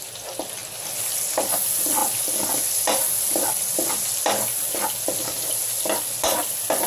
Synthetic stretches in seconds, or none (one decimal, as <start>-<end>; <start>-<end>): none